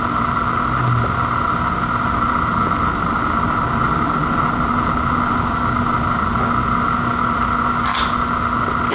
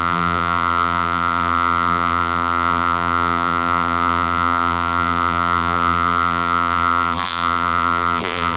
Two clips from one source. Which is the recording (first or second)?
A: first